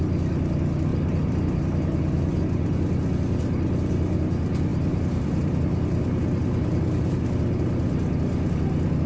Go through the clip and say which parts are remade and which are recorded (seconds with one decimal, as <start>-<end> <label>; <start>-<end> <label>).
0.0-0.9 recorded; 0.9-2.4 remade; 2.4-4.7 recorded; 4.7-7.2 remade; 7.2-9.1 recorded